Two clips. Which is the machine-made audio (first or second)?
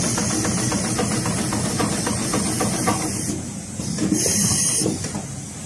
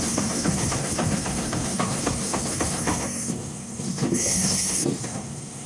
second